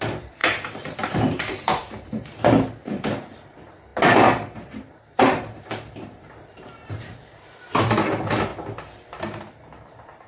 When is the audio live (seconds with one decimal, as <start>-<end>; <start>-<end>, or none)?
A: 8.5-9.5